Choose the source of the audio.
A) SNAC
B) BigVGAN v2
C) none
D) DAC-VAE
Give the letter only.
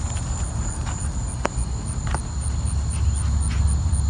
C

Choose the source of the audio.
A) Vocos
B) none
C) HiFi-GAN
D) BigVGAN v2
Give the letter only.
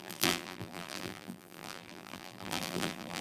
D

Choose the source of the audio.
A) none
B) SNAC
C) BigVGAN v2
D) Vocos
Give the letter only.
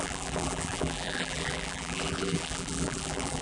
C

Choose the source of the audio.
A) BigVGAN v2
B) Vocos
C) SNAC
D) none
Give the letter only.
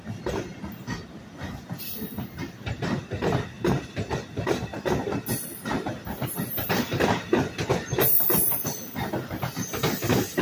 D